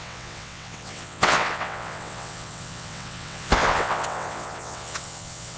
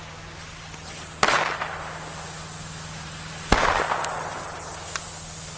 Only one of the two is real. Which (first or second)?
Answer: second